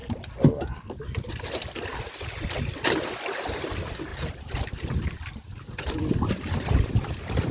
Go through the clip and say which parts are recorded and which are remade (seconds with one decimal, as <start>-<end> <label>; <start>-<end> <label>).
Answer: 0.0-2.6 recorded; 2.6-7.5 remade